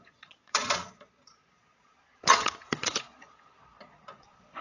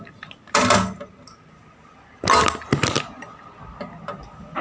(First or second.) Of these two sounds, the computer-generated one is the first